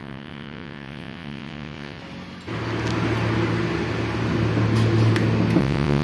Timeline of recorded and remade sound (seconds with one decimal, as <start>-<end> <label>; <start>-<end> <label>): 0.0-2.0 remade; 2.0-5.6 recorded; 5.6-6.0 remade